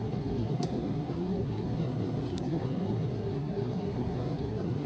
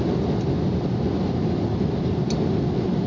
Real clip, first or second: second